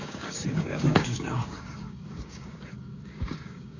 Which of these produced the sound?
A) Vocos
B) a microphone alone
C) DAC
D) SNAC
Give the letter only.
C